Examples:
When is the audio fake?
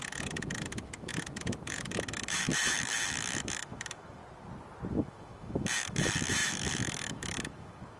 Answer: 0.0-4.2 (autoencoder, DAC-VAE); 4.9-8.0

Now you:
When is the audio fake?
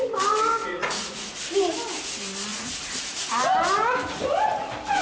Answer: 0.6-1.4 (vocoder, Vocos); 2.5-3.3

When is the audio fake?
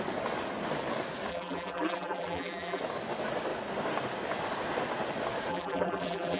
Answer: 1.3-2.8 (vocoder, BigVGAN v2); 5.5-6.4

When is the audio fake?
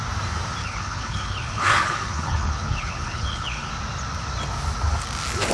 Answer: 0.6-3.7 (codec, HILCodec)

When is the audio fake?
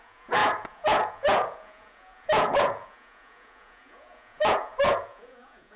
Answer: 0.0-5.8 (vocoder, Vocos)